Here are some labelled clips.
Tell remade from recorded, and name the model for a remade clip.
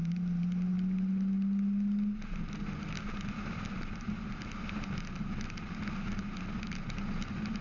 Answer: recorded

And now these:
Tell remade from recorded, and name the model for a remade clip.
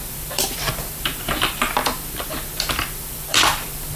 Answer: remade, vocoder, BigVGAN v2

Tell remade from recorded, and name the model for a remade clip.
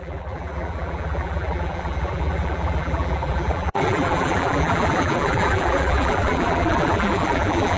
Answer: remade, vocoder, BigVGAN v2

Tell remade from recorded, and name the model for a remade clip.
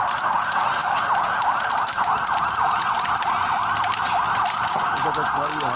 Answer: recorded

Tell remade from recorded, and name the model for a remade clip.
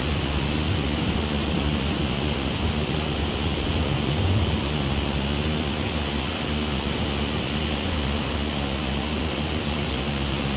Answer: remade, vocoder, Vocos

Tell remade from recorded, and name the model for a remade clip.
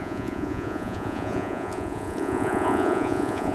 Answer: remade, vocoder, Vocos